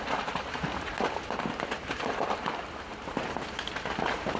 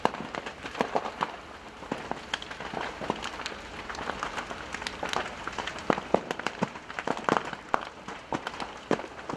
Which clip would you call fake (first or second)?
first